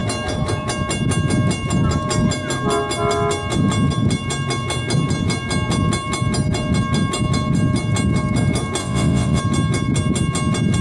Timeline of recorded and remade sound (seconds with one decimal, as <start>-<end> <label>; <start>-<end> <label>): 0.0-8.8 recorded; 8.8-9.4 remade; 9.4-10.8 recorded